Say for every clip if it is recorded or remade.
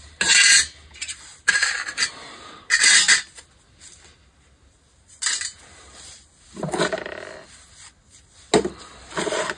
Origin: recorded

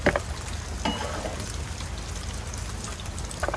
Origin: recorded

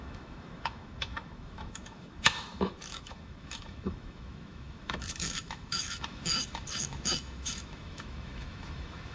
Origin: remade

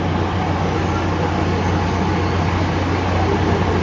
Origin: recorded